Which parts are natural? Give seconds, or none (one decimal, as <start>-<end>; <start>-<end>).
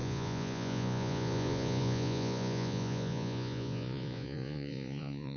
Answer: none